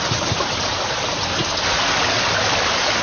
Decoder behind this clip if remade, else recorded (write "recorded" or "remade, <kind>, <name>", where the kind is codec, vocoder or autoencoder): recorded